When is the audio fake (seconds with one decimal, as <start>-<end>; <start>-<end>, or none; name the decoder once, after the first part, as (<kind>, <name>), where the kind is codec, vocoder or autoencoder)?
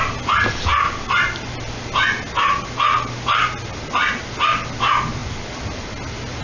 none